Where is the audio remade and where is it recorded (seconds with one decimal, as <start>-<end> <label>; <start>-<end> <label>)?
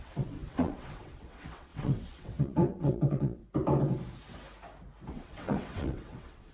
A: 0.0-3.4 remade; 3.4-5.1 recorded; 5.1-6.5 remade